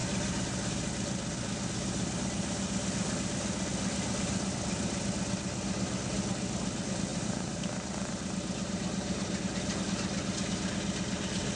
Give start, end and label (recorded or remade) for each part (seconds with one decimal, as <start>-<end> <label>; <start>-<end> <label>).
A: 0.0-7.1 recorded; 7.1-9.4 remade; 9.4-11.6 recorded